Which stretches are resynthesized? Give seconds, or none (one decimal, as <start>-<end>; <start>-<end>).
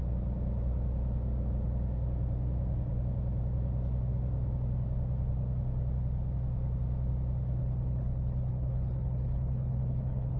7.6-10.4